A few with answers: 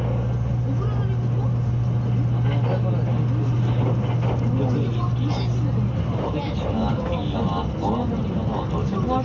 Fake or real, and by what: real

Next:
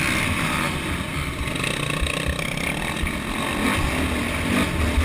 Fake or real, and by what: real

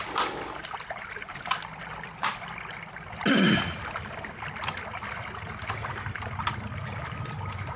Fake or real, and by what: real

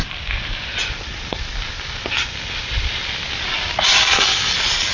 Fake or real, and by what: real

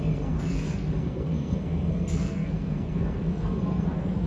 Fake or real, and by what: fake, codec, SNAC